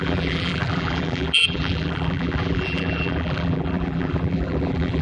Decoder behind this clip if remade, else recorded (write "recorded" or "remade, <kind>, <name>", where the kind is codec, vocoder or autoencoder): remade, vocoder, BigVGAN v2